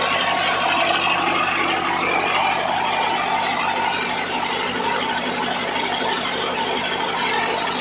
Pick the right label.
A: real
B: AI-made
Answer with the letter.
A